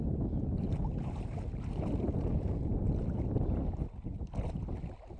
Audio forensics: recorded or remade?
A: recorded